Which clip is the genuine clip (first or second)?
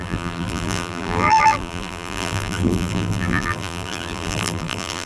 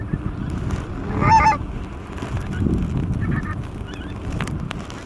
second